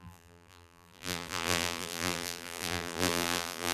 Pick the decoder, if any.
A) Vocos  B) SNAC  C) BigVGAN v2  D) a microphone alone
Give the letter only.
C